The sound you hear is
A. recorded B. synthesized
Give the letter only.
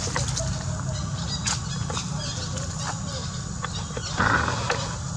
A